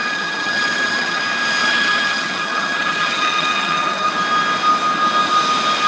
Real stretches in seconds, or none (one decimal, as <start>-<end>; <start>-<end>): 1.2-1.6; 4.1-5.9